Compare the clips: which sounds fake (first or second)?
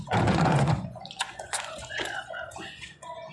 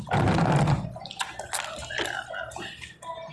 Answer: first